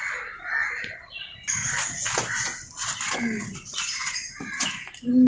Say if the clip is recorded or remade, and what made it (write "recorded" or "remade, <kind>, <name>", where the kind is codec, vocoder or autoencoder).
recorded